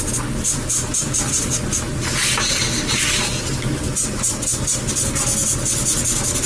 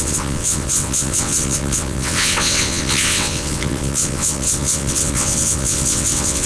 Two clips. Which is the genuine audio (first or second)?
first